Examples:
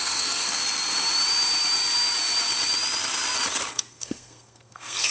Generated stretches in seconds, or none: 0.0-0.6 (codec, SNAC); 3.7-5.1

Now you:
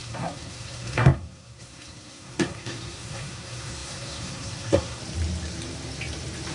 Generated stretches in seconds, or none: 0.0-5.0 (codec, SNAC)

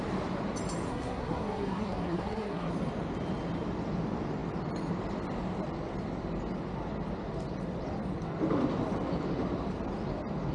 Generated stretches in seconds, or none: 0.9-2.7 (codec, SNAC)

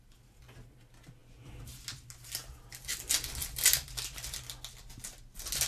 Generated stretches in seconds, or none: none

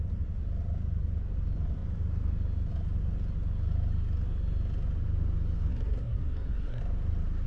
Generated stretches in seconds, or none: 5.7-6.8 (codec, SNAC)

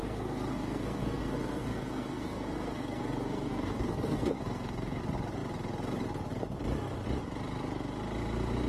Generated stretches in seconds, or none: 0.0-5.0 (codec, SNAC)